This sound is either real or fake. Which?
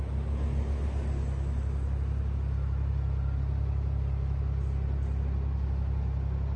real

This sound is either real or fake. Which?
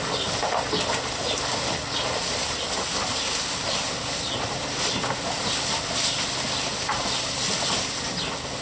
real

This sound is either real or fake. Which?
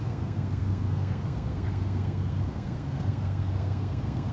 fake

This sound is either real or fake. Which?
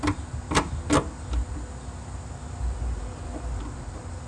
real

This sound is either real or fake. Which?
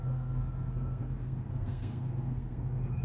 fake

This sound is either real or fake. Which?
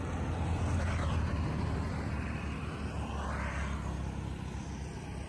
real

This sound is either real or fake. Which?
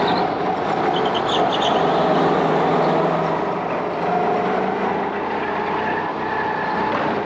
real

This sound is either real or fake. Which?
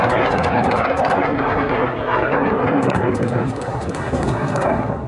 fake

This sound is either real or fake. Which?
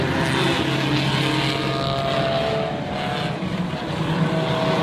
real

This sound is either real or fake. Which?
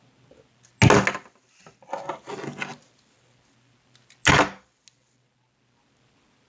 real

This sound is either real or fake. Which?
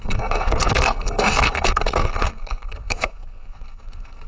fake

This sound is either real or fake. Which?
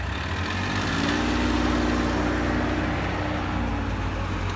real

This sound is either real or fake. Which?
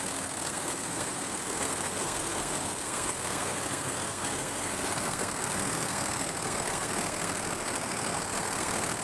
fake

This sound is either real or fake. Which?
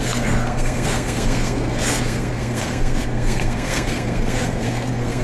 fake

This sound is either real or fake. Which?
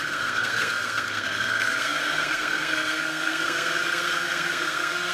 fake